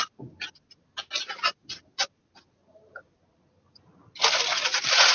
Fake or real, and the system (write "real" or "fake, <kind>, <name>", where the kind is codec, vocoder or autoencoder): real